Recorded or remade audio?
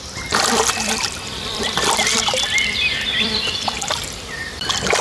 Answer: remade